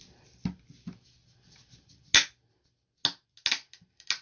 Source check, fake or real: real